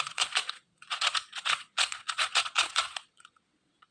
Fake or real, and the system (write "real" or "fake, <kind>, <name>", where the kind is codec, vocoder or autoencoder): fake, vocoder, Vocos